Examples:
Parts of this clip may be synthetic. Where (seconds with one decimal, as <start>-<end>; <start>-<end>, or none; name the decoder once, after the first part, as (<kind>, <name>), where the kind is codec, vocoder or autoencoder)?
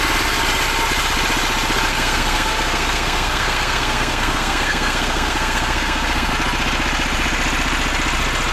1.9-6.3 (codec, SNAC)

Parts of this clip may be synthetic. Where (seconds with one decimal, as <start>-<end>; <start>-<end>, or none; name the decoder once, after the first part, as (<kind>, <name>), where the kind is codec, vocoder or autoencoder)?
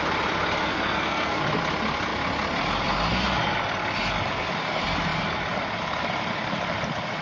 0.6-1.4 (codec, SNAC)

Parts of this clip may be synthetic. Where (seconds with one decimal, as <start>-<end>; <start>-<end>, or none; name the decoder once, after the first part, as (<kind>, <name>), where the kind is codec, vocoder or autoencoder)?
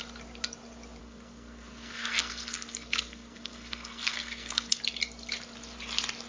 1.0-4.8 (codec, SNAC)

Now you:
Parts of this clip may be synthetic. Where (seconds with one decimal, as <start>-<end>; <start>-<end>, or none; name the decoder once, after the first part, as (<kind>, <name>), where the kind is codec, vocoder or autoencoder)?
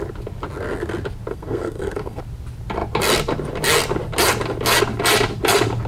1.3-2.2 (codec, SNAC)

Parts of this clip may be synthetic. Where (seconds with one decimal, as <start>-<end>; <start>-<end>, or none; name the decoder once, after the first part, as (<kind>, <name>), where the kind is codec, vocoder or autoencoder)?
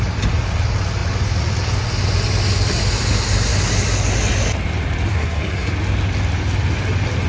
5.1-5.7 (codec, SNAC)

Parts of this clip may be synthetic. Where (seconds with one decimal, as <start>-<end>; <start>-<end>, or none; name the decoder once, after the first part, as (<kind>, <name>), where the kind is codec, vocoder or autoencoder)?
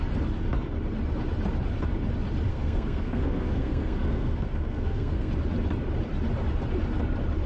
2.5-5.3 (codec, SNAC)